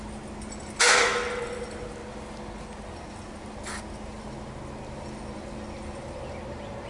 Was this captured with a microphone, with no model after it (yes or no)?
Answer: yes